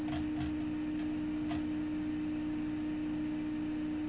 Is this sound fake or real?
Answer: real